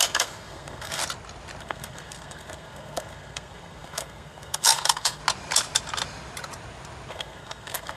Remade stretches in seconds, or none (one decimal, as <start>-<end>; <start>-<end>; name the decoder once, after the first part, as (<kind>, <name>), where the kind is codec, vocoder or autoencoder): 0.0-1.0 (codec, SNAC); 1.6-5.2; 7.1-8.0